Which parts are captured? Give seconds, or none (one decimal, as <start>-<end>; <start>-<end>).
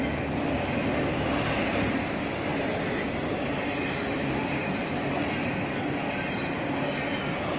0.0-7.6